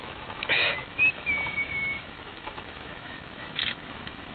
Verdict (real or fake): fake